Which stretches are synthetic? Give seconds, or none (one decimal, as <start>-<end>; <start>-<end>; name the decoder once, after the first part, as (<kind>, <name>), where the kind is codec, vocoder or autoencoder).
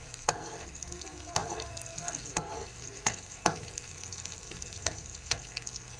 0.0-6.0 (codec, SNAC)